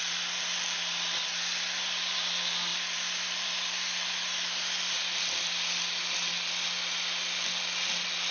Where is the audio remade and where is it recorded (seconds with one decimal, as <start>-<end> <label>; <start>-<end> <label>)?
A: 0.0-2.7 recorded; 2.7-3.5 remade; 3.5-8.3 recorded